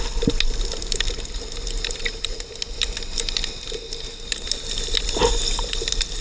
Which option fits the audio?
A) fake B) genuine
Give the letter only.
B